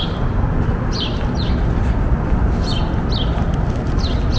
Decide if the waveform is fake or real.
real